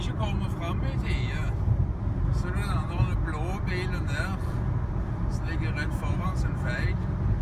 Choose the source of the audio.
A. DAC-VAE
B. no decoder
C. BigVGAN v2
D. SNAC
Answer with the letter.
B